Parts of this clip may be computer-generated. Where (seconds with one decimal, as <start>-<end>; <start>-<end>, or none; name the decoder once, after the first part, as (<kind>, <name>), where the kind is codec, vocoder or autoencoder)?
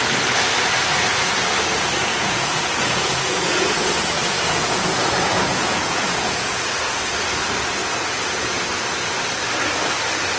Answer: 2.1-6.8 (vocoder, Vocos); 7.8-8.6